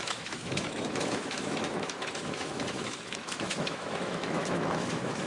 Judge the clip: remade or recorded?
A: remade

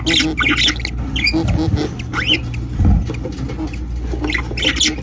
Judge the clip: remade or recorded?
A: recorded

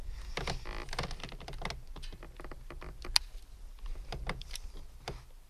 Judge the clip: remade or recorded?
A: recorded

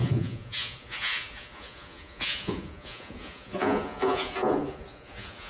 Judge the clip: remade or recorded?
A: remade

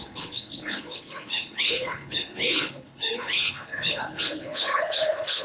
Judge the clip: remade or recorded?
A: remade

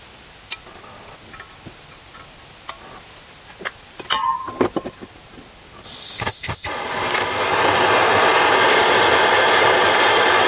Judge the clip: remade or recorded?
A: recorded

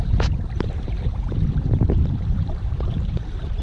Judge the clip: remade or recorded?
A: remade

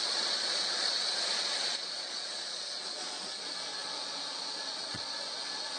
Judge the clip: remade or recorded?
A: remade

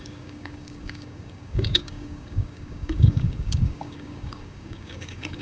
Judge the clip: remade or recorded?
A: remade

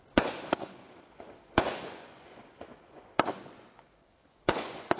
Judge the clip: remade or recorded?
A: remade